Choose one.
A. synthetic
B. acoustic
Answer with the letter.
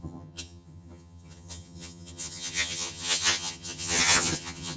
A